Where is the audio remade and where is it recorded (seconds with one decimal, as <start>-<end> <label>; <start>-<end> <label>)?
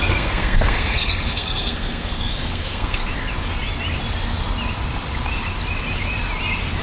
0.0-3.0 remade; 3.0-6.8 recorded